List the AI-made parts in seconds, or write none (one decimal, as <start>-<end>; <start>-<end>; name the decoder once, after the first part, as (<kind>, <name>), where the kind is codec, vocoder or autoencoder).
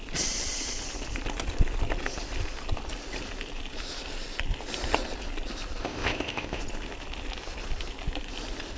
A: 5.8-6.6 (codec, ZipCodec)